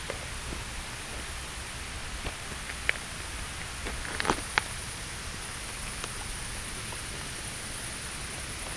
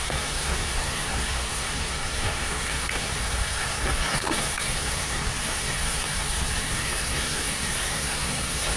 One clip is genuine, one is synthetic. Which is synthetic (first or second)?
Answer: second